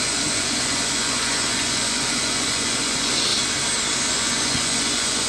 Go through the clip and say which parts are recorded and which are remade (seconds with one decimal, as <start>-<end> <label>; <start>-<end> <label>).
0.0-3.3 remade; 3.3-4.1 recorded; 4.1-5.3 remade